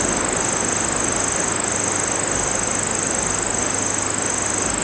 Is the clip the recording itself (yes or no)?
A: yes